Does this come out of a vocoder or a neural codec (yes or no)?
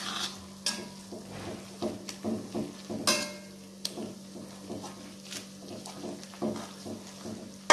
no